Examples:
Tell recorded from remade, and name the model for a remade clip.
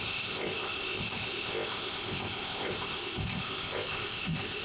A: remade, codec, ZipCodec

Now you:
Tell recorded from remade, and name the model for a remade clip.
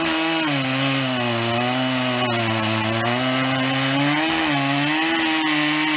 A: recorded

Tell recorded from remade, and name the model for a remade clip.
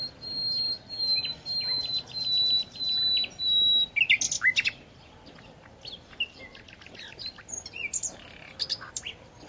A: recorded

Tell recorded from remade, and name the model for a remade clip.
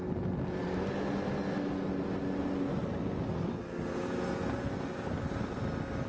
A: recorded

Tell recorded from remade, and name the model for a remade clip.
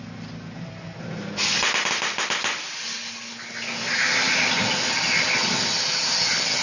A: recorded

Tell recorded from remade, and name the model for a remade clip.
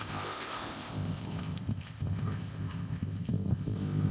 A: remade, codec, ZipCodec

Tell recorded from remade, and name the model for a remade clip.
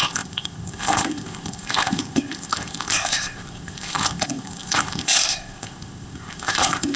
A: remade, codec, ZipCodec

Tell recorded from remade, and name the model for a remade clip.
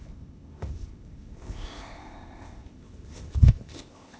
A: remade, codec, ZipCodec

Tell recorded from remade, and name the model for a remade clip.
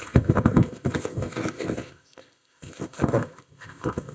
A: remade, codec, ZipCodec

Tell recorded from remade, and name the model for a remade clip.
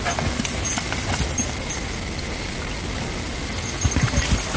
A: recorded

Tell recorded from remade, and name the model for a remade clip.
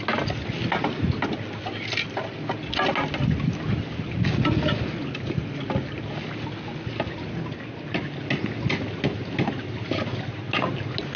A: recorded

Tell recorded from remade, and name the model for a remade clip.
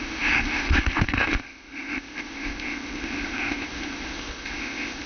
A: remade, codec, ZipCodec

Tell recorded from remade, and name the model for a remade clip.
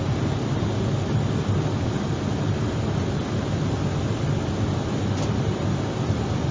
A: recorded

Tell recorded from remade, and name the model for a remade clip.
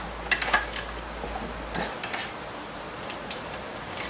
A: recorded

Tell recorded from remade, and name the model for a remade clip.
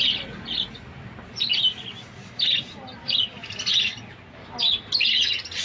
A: recorded